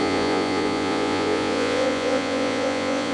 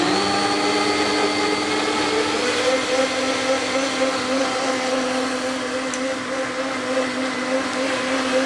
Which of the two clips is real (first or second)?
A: second